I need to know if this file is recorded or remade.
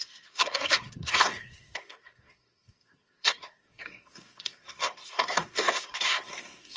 remade